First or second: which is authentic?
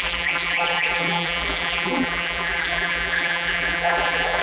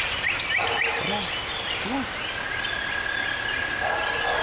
second